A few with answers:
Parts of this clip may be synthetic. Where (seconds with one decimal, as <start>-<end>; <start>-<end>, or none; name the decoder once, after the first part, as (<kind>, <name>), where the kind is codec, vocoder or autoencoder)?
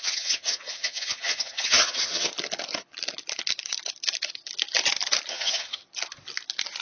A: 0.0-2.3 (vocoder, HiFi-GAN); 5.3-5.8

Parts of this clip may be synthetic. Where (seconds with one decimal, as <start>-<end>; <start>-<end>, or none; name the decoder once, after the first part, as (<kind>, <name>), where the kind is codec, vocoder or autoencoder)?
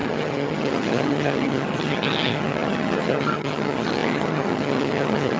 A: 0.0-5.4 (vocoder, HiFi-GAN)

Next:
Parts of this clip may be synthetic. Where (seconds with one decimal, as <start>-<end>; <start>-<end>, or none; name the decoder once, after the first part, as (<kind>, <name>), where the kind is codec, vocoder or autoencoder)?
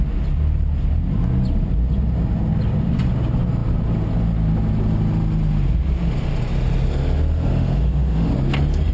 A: 7.5-8.3 (autoencoder, DAC-VAE)